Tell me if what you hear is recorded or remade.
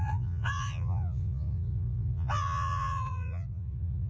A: remade